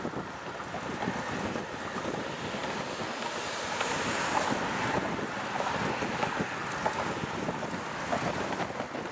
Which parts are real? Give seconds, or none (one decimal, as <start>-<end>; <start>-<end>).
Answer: 0.0-9.1